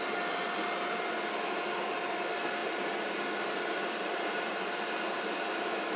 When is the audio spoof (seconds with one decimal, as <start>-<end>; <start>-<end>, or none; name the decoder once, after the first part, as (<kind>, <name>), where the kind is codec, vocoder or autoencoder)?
none